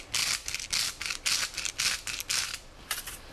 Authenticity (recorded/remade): recorded